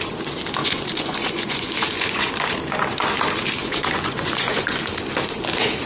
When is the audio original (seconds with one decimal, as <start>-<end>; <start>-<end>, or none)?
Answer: 0.0-0.6; 2.3-3.6; 4.9-5.9